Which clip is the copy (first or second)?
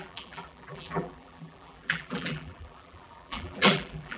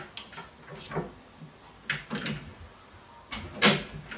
first